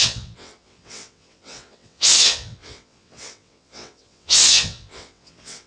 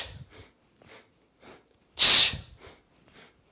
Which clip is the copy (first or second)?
first